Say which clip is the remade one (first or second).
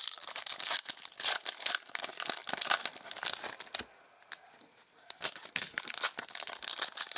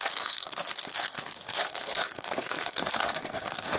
second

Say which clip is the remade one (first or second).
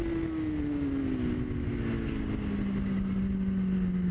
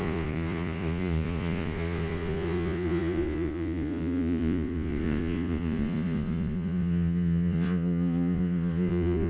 second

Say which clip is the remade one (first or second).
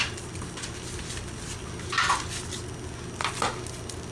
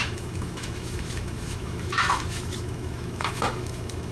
second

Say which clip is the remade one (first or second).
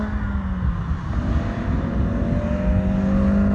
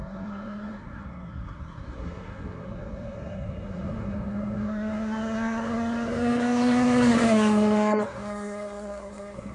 second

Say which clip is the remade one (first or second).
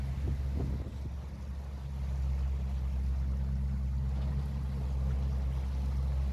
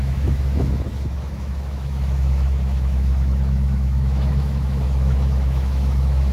second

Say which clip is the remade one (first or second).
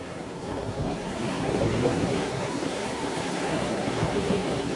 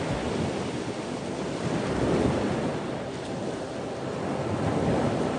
first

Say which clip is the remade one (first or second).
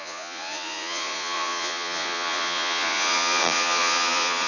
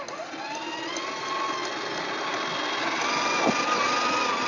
first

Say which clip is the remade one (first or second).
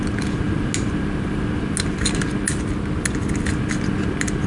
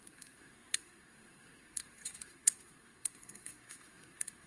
second